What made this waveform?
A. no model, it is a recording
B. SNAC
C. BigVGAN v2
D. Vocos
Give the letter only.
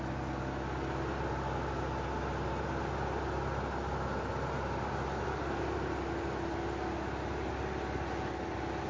A